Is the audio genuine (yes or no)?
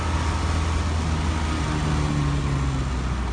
yes